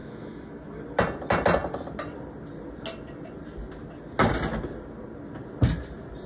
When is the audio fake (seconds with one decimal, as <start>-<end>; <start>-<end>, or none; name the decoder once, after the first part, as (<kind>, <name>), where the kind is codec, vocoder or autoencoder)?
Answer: 0.0-0.8 (autoencoder, DAC-VAE)